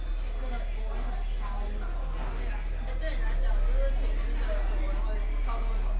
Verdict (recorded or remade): recorded